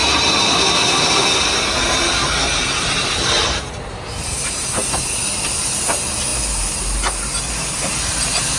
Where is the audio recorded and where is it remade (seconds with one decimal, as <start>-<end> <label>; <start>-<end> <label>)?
0.0-1.8 recorded; 1.8-6.3 remade; 6.3-7.9 recorded; 7.9-8.6 remade